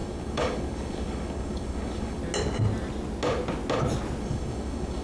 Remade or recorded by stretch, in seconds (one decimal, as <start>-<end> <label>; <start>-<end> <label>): 0.0-2.2 remade; 2.2-4.2 recorded; 4.2-5.0 remade